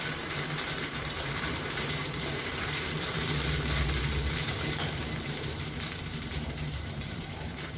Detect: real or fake fake